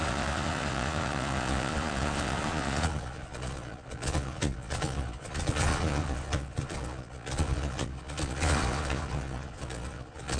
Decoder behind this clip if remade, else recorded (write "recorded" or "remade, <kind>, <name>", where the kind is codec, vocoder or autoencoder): remade, vocoder, Vocos